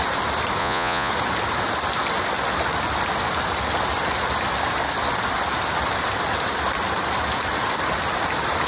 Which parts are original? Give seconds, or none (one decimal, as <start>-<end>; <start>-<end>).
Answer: 0.0-0.6; 1.1-8.7